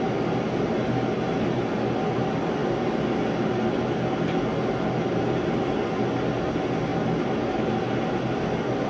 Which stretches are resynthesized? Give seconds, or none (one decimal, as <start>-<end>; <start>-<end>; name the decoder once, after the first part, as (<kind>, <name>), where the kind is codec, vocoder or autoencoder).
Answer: none